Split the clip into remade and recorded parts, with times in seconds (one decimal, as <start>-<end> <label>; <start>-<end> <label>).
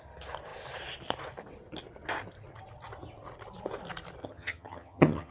0.0-4.2 recorded; 4.2-5.3 remade